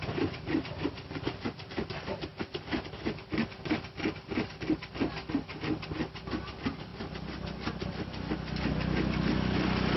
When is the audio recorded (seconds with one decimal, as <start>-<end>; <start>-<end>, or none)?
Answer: 0.0-10.0